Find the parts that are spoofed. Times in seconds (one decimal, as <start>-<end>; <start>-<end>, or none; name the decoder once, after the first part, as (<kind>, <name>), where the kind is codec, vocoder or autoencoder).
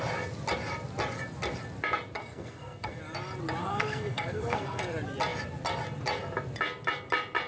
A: 2.2-3.0 (codec, SNAC); 3.6-4.8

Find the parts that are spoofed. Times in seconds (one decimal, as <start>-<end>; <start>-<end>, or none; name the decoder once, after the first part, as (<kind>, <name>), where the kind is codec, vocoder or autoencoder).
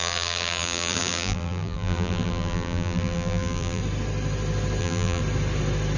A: 0.0-3.8 (vocoder, BigVGAN v2); 4.8-5.2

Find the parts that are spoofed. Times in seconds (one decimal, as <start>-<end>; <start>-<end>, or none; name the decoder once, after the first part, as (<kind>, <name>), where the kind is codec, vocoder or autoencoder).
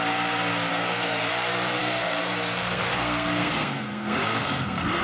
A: 0.7-1.3 (codec, SNAC); 1.8-5.0